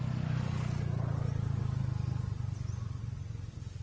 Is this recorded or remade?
recorded